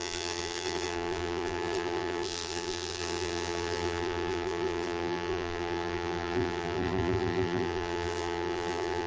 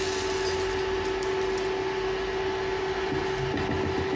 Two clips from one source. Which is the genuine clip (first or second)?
second